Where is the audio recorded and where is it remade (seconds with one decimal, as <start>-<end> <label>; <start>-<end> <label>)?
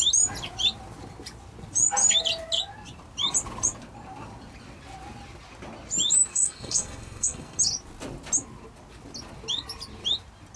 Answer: 0.0-6.3 recorded; 6.3-7.6 remade; 7.6-10.6 recorded